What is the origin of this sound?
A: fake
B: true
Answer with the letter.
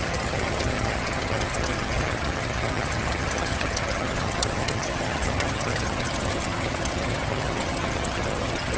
A